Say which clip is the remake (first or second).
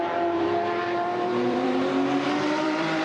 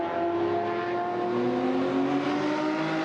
first